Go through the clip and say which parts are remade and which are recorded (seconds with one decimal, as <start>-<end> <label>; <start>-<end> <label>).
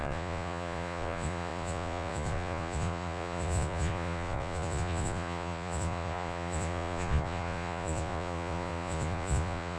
0.0-9.8 remade